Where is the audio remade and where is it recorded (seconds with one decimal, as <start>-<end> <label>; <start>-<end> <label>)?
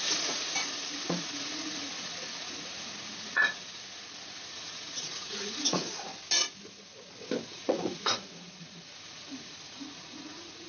0.0-6.1 remade; 6.1-7.5 recorded; 7.5-10.7 remade